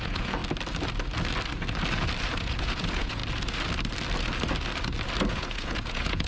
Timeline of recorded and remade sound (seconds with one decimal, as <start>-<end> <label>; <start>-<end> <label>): 0.0-0.4 remade; 0.4-2.3 recorded; 2.3-3.2 remade; 3.2-5.3 recorded; 5.3-6.3 remade